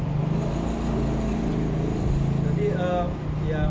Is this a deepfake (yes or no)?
no